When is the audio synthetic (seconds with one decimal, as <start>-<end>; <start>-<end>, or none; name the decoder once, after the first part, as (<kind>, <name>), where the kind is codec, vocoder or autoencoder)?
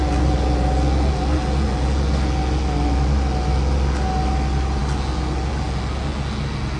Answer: none